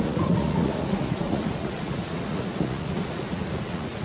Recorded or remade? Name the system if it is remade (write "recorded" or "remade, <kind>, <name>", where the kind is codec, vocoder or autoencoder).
remade, vocoder, Vocos